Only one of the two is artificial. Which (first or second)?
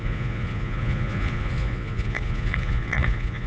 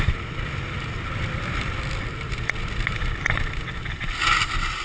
first